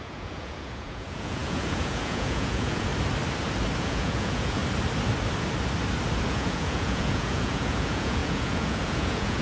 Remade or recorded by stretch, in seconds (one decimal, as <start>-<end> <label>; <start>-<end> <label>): 0.0-2.9 remade; 2.9-3.8 recorded; 3.8-4.6 remade; 4.6-6.3 recorded; 6.3-9.4 remade